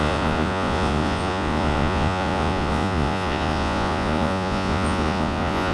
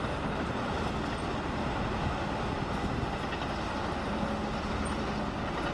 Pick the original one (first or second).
second